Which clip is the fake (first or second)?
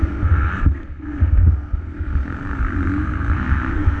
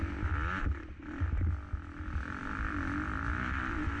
first